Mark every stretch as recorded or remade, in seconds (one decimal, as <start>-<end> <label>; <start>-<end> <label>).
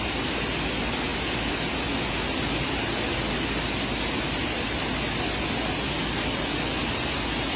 0.0-7.6 recorded